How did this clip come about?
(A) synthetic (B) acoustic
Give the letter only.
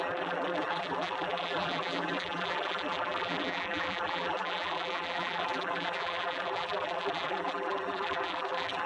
A